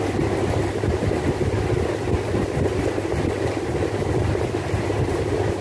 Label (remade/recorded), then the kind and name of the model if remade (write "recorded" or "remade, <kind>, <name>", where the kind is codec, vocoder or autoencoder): recorded